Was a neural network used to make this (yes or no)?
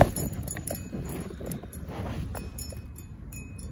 yes